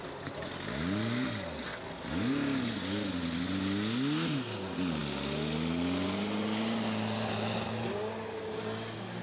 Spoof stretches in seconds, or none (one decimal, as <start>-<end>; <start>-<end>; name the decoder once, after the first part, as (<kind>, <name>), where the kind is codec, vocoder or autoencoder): none